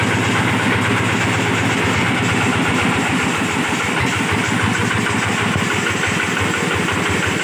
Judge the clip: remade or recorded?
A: recorded